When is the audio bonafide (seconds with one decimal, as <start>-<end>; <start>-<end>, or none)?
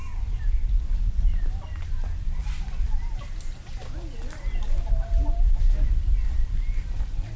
1.1-2.4; 3.0-7.4